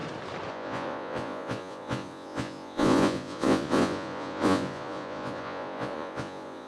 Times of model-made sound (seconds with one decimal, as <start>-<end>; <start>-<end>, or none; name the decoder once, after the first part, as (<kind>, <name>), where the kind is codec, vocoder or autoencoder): 0.5-6.7 (vocoder, Vocos)